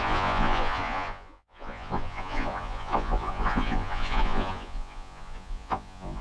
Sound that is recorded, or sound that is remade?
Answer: remade